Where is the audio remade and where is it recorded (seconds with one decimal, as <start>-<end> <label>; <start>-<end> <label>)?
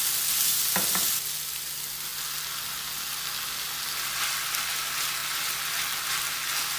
0.0-6.8 recorded